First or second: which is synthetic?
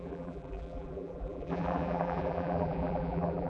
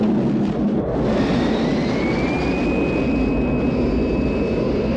first